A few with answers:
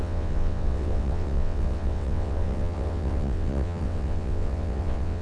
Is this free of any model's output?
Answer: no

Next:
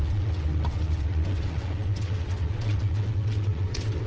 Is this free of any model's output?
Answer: no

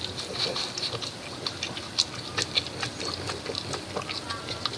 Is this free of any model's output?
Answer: yes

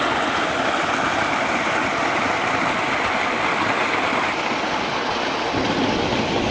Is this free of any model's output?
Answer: yes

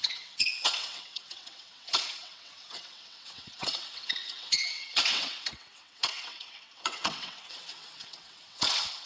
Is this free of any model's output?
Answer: no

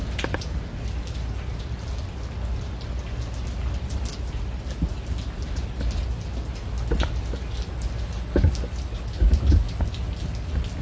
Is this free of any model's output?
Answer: yes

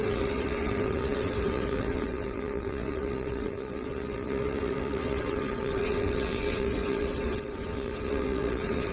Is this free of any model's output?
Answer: no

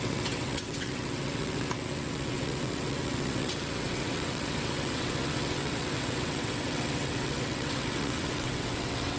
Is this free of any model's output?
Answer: no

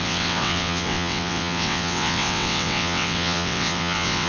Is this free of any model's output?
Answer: no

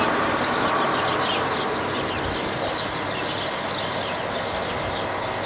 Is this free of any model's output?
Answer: yes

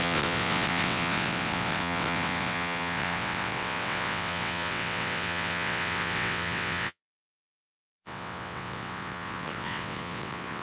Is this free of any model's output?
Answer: no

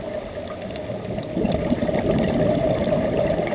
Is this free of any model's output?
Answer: yes